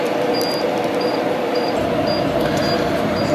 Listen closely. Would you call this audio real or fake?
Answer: real